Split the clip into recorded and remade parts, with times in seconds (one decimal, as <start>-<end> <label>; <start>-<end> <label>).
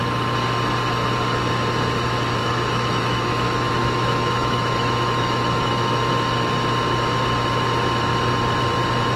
0.0-2.4 recorded; 2.4-6.1 remade; 6.1-9.2 recorded